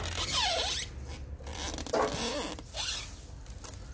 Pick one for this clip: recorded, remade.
recorded